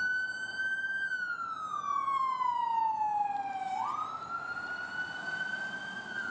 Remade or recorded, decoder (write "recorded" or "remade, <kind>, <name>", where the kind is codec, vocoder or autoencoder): recorded